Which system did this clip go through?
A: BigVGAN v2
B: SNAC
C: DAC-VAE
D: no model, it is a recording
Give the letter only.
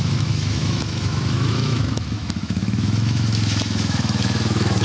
C